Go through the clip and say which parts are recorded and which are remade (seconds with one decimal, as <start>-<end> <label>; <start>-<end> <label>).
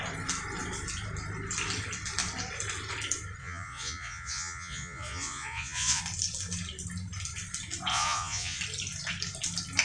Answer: 0.0-3.4 recorded; 3.4-6.0 remade; 6.0-7.9 recorded; 7.9-8.6 remade; 8.6-9.8 recorded